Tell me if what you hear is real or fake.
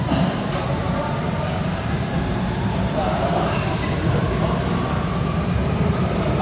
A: fake